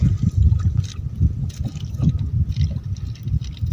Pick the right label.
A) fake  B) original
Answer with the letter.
B